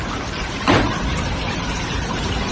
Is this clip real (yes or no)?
no